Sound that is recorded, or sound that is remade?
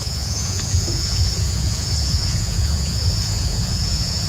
remade